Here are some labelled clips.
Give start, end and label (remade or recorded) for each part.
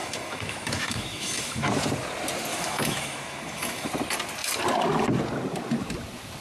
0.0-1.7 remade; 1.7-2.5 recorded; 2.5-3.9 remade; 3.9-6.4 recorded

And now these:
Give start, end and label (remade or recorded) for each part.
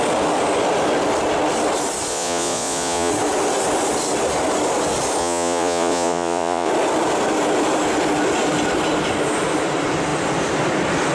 0.0-2.1 recorded; 2.1-3.1 remade; 3.1-5.2 recorded; 5.2-6.7 remade; 6.7-11.1 recorded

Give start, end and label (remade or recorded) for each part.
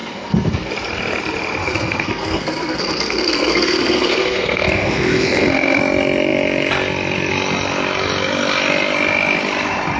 0.0-0.7 remade; 0.7-1.6 recorded; 1.6-5.8 remade; 5.8-10.0 recorded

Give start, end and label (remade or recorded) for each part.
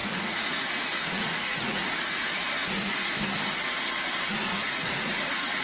0.0-1.9 remade; 1.9-2.6 recorded; 2.6-3.2 remade; 3.2-4.5 recorded; 4.5-5.6 remade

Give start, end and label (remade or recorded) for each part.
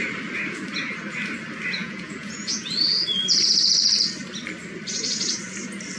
0.0-1.8 recorded; 1.8-2.7 remade; 2.7-6.0 recorded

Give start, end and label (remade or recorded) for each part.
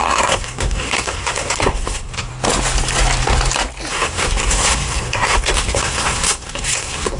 0.0-2.3 remade; 2.3-3.9 recorded; 3.9-7.2 remade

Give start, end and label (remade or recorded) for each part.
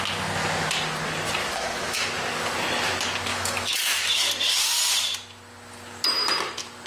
0.0-1.4 recorded; 1.4-2.0 remade; 2.0-3.3 recorded; 3.3-4.3 remade; 4.3-6.9 recorded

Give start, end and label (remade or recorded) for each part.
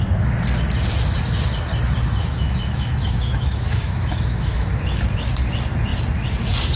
0.0-2.2 recorded; 2.2-5.0 remade; 5.0-6.8 recorded